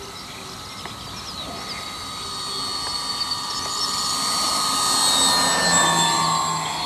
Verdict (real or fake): real